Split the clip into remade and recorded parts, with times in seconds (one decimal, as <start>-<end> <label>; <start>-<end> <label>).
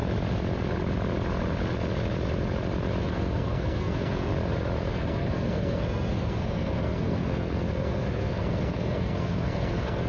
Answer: 0.0-3.0 recorded; 3.0-4.3 remade; 4.3-4.9 recorded; 4.9-10.1 remade